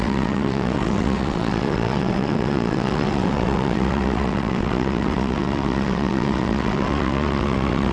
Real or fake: fake